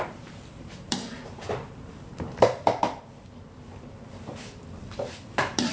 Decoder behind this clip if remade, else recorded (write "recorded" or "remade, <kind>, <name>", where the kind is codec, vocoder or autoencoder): remade, vocoder, BigVGAN v2